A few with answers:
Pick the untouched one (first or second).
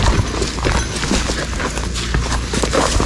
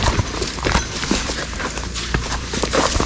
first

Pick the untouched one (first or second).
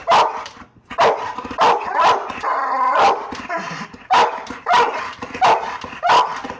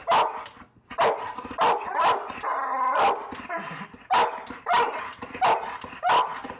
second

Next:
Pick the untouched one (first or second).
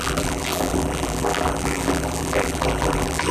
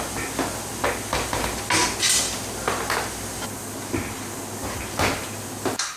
second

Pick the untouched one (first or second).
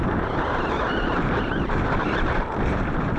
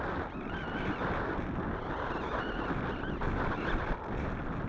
second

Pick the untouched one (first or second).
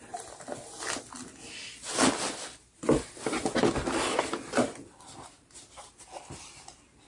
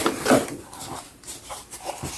first